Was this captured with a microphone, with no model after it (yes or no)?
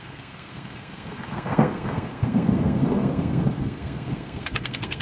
no